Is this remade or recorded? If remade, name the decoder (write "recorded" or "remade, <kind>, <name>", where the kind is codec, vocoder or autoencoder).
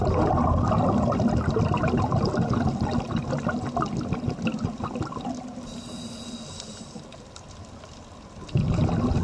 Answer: recorded